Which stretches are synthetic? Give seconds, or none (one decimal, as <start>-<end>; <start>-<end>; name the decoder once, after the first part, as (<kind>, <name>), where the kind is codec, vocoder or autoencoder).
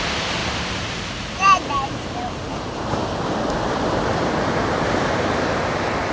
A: 0.4-2.7 (vocoder, BigVGAN v2); 4.1-5.6